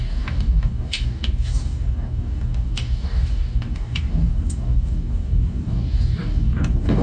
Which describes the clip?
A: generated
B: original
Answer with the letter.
A